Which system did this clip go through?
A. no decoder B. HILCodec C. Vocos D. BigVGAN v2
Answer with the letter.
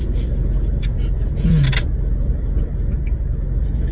D